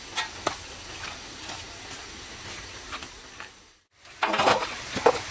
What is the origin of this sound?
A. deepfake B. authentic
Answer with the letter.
B